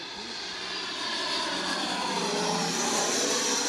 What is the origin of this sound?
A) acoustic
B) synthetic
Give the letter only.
A